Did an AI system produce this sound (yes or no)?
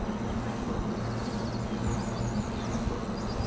no